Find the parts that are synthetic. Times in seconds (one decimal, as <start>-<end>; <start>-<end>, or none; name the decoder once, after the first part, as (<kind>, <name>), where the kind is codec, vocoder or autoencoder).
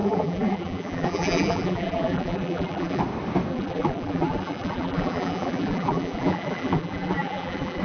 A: 0.0-3.0 (vocoder, BigVGAN v2); 3.5-7.8